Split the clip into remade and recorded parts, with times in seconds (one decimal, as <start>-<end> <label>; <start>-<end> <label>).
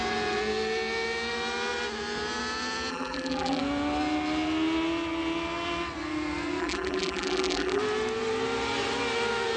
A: 0.0-2.9 recorded; 2.9-3.6 remade; 3.6-6.6 recorded; 6.6-7.8 remade; 7.8-9.6 recorded